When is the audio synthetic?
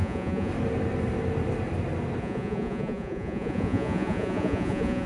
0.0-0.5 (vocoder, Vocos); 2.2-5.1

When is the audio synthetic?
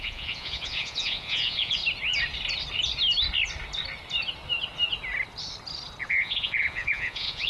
0.0-1.8 (vocoder, Vocos); 6.1-7.5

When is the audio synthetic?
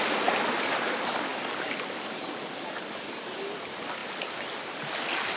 none